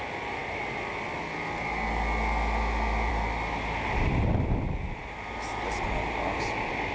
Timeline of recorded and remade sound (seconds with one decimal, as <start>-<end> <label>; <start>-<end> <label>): 0.0-6.9 recorded